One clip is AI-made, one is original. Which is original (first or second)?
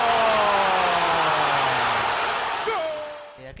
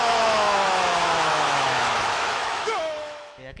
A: first